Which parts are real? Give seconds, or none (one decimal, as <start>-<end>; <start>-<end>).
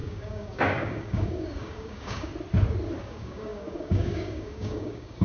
2.3-3.0